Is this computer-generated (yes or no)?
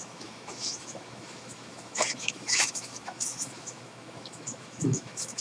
yes